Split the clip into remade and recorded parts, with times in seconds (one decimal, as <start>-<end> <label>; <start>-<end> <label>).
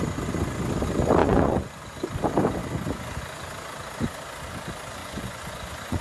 0.0-1.2 recorded; 1.2-1.8 remade; 1.8-5.0 recorded; 5.0-6.0 remade